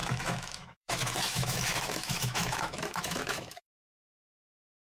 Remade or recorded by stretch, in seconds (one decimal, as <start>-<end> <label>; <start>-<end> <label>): 0.0-5.0 remade